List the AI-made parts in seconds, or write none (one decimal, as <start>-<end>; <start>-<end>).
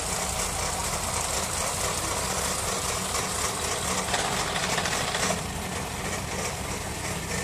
0.8-1.3